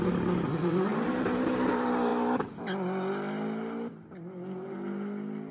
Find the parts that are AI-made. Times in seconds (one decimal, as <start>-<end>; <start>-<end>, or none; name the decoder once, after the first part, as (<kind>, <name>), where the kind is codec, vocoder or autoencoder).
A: none